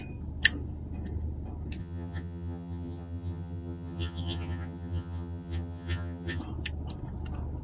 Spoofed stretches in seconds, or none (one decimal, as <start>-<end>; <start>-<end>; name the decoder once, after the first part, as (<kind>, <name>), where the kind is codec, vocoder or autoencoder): 1.8-6.4 (vocoder, HiFi-GAN)

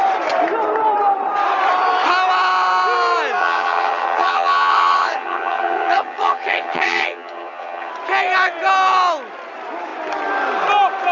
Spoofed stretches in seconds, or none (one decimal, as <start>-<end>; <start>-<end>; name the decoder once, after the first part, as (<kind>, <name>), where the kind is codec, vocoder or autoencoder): 3.4-7.9 (vocoder, HiFi-GAN)

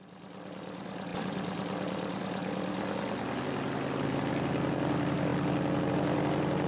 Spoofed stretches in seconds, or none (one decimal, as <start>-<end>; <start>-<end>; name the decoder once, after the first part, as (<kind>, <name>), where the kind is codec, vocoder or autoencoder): none